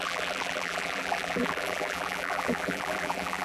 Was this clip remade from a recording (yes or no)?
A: yes